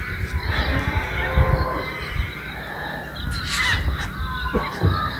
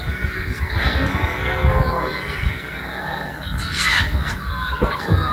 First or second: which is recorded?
first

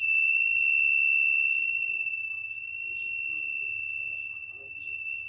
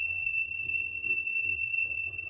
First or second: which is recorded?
first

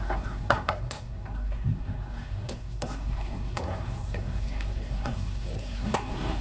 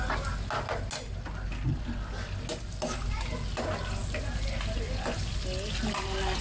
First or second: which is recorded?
second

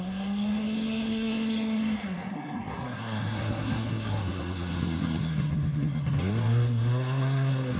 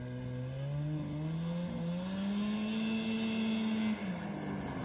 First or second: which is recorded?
second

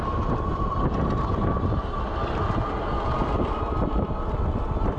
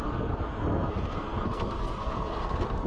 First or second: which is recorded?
first